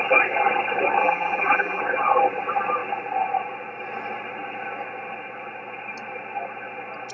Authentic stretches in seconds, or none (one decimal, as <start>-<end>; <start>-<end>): 0.0-1.0; 1.8-7.1